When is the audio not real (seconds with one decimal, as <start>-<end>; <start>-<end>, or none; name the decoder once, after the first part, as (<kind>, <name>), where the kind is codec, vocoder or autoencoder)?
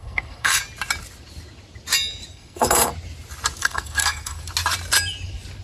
0.0-0.6 (codec, SNAC); 2.3-2.9; 3.6-4.4